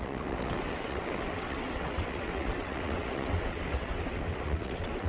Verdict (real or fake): fake